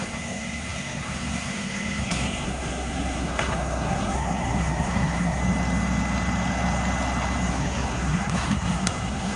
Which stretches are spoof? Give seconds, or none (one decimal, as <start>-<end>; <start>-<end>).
0.0-5.4; 7.5-9.4